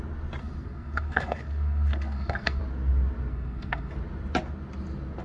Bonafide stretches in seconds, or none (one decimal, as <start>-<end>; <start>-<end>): 0.0-0.4; 2.6-3.3; 3.9-5.2